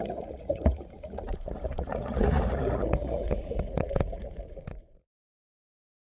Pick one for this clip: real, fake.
fake